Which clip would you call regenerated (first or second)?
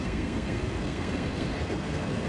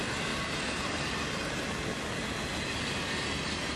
first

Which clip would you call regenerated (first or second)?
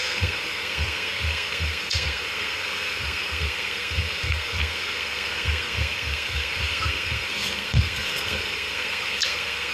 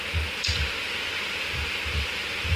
first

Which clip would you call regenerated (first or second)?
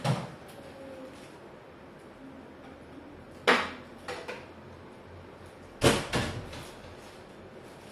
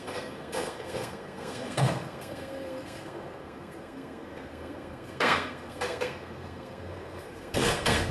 second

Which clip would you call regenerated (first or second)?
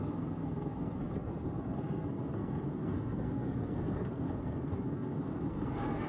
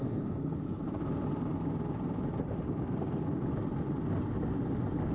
first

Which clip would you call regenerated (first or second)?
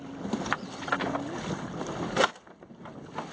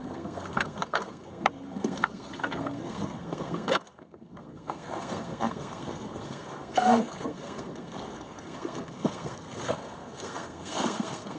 second